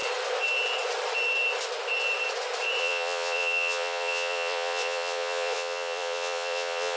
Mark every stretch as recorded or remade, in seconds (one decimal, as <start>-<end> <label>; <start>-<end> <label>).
0.0-2.8 recorded; 2.8-7.0 remade